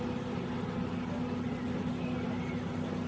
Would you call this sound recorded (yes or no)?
yes